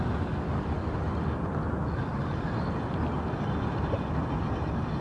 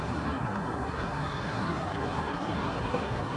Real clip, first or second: first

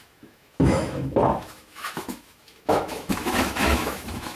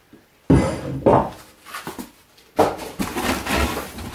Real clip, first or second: second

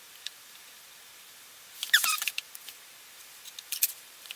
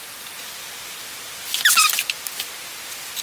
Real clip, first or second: second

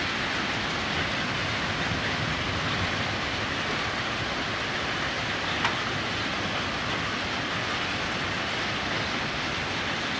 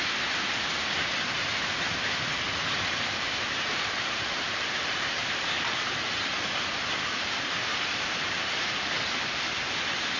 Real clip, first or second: first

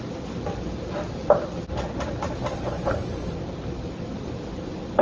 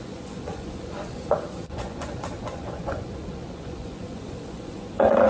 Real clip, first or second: first